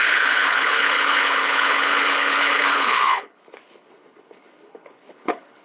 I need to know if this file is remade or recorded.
remade